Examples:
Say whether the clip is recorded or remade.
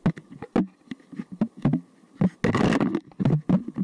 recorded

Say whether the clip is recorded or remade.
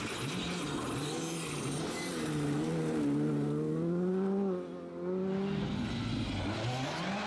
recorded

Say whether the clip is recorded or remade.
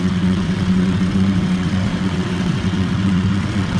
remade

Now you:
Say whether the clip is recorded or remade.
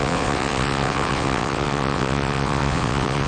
remade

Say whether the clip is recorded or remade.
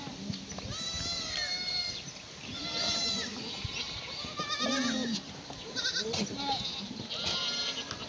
recorded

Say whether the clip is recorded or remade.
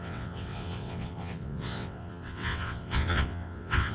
remade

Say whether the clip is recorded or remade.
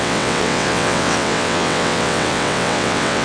remade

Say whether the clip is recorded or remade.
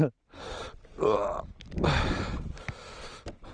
recorded